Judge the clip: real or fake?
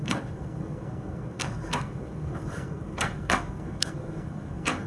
fake